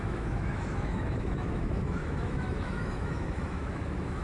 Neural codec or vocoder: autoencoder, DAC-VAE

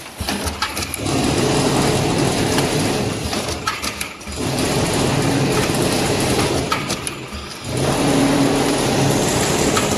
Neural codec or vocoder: vocoder, BigVGAN v2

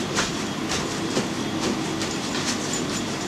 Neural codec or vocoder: vocoder, BigVGAN v2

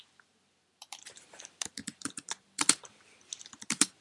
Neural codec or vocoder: vocoder, BigVGAN v2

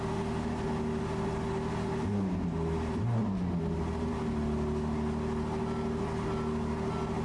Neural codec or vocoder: none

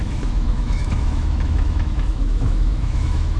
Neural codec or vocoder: autoencoder, DAC-VAE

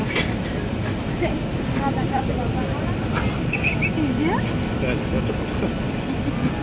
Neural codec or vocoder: vocoder, BigVGAN v2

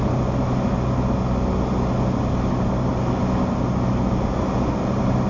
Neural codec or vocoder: none